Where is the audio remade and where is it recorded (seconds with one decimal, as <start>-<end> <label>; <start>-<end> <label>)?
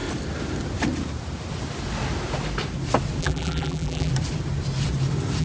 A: 0.0-3.2 recorded; 3.2-4.1 remade; 4.1-5.4 recorded